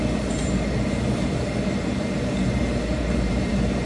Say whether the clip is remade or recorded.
remade